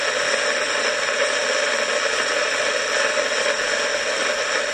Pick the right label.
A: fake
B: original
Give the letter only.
B